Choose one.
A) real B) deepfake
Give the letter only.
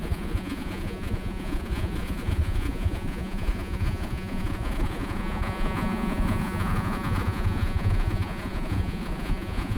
B